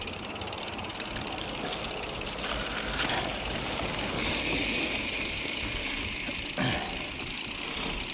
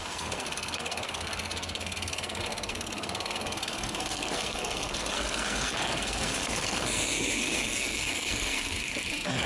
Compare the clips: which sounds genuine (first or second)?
first